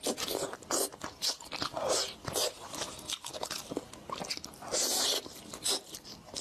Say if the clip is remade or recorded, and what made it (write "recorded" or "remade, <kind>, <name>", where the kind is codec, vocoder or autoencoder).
recorded